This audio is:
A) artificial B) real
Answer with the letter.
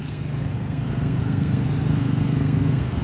A